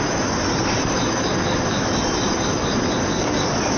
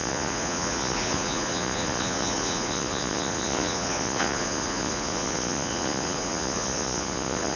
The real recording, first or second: first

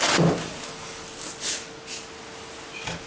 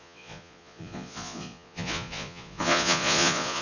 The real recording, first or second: first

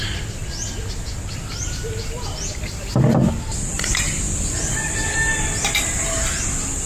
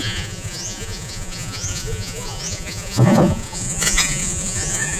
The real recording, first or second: first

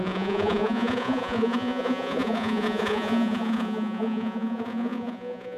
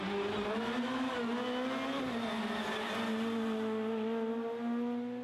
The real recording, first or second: second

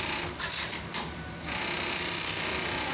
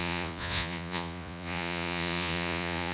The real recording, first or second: first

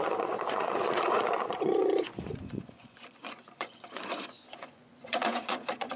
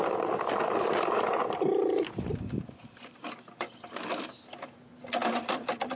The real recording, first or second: second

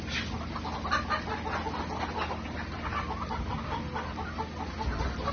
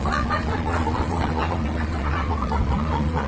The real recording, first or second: first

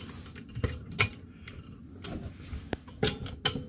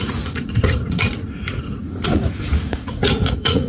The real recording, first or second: first